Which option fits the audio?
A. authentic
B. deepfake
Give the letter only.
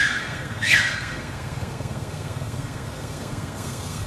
B